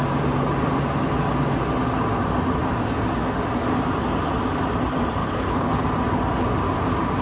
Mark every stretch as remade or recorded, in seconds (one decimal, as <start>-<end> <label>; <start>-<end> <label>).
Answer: 0.0-5.2 recorded; 5.2-5.8 remade; 5.8-7.2 recorded